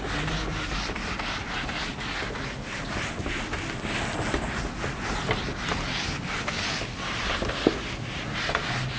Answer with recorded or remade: recorded